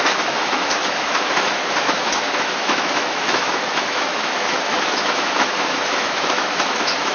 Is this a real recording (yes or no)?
no